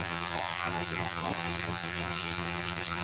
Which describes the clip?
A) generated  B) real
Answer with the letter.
A